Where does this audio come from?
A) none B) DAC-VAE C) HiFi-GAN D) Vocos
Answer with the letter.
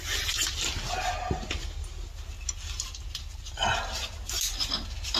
A